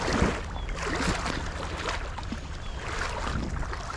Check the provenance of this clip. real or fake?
real